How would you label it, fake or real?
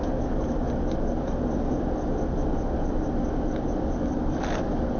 real